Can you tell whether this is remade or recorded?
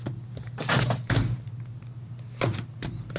recorded